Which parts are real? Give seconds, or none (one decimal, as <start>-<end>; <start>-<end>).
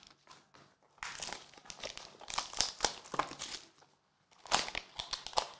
0.0-5.6